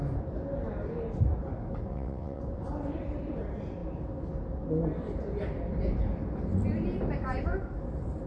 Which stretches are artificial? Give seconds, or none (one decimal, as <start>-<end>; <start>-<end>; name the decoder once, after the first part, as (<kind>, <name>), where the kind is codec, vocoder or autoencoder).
1.9-2.4 (vocoder, WaveNeXt)

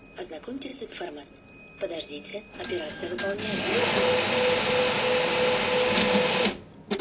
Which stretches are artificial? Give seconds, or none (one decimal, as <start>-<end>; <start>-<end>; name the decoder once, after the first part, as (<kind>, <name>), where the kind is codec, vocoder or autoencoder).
none